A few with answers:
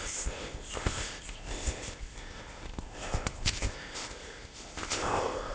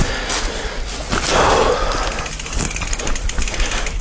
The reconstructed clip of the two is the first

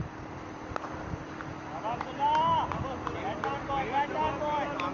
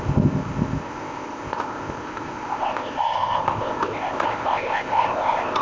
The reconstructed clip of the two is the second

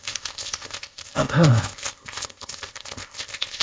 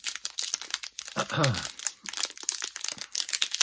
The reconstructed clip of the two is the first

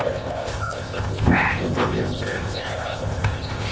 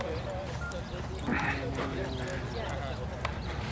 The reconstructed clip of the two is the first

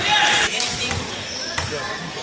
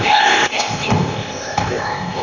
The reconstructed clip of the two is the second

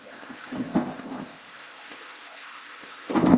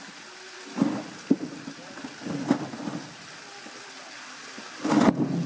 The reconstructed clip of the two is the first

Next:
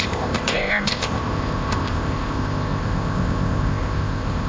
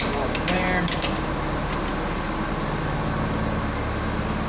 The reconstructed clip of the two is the first